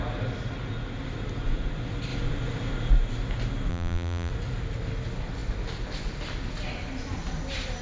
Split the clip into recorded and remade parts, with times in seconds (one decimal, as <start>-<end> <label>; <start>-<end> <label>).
0.0-3.7 recorded; 3.7-4.3 remade; 4.3-7.8 recorded